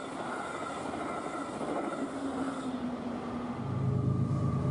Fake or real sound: real